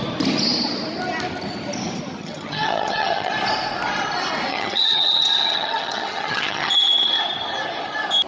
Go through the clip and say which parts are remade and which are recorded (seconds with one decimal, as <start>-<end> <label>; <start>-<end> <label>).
0.0-2.2 recorded; 2.2-3.3 remade; 3.3-4.5 recorded; 4.5-7.2 remade; 7.2-8.3 recorded

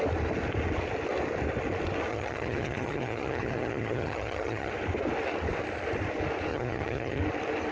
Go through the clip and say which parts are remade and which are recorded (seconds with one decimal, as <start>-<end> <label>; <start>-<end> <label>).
0.0-2.1 recorded; 2.1-4.7 remade; 4.7-6.5 recorded; 6.5-7.2 remade; 7.2-7.7 recorded

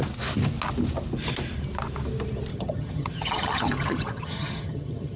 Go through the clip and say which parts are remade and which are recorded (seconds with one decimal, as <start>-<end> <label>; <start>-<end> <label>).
0.0-2.5 recorded; 2.5-5.2 remade

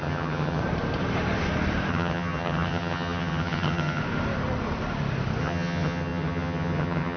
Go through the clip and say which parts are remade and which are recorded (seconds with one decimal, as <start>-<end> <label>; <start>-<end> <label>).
0.0-0.6 remade; 0.6-1.9 recorded; 1.9-4.0 remade; 4.0-5.4 recorded; 5.4-7.2 remade

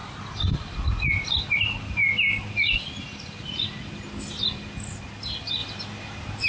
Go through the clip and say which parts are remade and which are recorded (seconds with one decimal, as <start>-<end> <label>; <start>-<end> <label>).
0.0-6.5 recorded

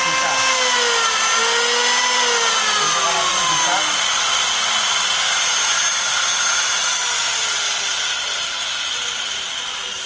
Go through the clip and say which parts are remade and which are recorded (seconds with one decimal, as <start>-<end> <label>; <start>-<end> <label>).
0.0-10.1 recorded